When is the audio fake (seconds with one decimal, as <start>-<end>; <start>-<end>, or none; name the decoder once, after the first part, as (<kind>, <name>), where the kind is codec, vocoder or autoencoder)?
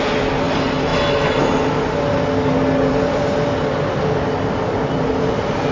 none